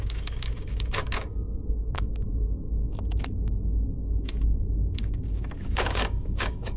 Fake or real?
fake